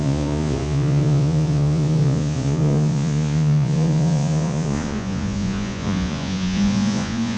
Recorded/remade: remade